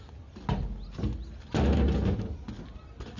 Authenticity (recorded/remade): recorded